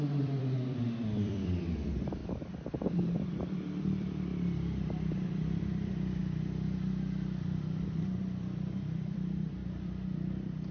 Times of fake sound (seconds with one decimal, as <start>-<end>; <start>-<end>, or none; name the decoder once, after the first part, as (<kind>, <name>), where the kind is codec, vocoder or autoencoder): 0.0-2.2 (vocoder, BigVGAN v2); 3.3-4.3; 5.6-6.2; 7.6-10.7